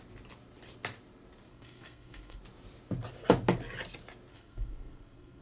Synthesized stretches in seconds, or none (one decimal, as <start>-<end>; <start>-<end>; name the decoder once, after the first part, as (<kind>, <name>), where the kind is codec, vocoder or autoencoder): 1.5-2.4 (codec, SNAC); 4.3-5.4